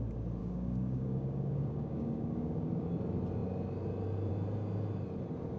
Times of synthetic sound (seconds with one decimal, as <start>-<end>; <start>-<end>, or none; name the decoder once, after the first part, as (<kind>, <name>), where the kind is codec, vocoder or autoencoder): 0.4-2.8 (codec, DAC)